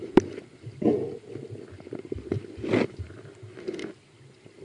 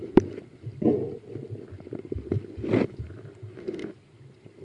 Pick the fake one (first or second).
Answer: second